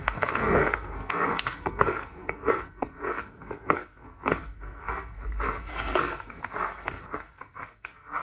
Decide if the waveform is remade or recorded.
remade